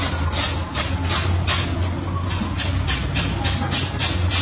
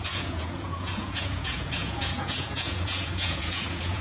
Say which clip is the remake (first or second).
second